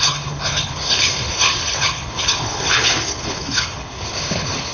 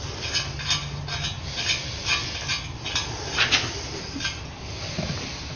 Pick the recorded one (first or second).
second